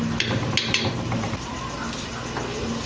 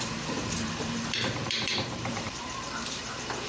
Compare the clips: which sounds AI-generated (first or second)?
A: second